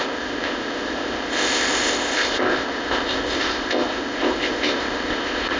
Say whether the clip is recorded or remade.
remade